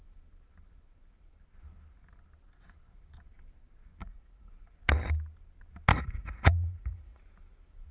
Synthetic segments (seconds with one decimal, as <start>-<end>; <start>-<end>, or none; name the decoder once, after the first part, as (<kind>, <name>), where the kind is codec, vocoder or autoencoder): 4.0-4.5 (vocoder, Vocos); 5.9-7.2